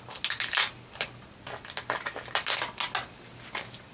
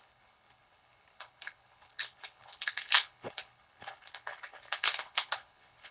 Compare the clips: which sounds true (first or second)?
first